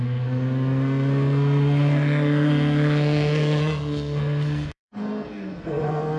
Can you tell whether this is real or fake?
fake